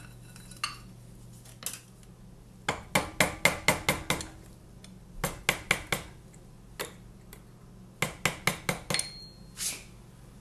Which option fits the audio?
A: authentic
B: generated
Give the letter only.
A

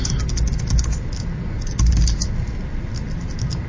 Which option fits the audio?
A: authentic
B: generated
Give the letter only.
A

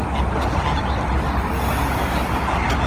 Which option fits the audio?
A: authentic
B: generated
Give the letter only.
A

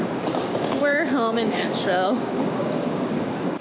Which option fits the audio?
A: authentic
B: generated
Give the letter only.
B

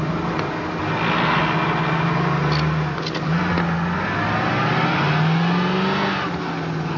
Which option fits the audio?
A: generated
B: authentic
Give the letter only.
B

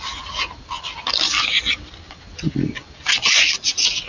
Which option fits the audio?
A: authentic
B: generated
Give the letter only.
A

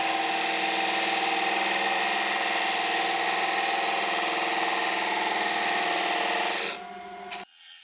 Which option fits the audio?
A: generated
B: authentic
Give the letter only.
B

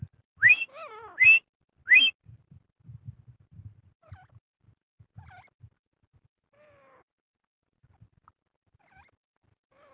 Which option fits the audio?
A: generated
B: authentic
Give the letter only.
B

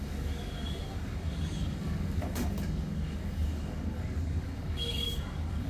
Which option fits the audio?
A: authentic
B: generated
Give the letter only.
B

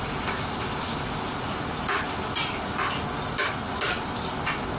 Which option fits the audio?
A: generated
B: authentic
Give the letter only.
B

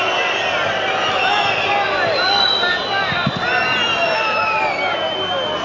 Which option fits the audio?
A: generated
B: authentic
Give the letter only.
B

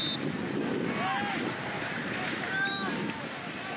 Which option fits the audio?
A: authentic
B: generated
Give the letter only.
A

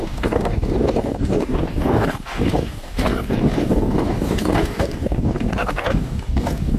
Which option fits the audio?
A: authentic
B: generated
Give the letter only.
B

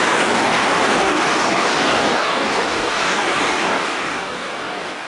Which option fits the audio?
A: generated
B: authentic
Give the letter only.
A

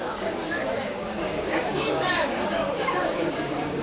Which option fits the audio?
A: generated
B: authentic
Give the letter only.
A